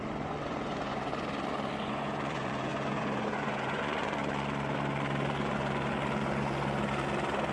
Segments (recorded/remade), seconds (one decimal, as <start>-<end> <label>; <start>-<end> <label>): 0.0-1.1 remade; 1.1-1.8 recorded; 1.8-4.2 remade; 4.2-7.5 recorded